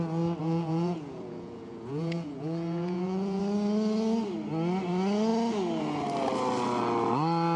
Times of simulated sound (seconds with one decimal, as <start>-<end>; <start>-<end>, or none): 0.4-3.4